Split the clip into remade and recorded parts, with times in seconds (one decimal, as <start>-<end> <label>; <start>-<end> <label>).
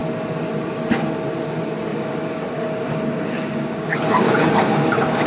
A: 0.0-1.9 recorded; 1.9-5.3 remade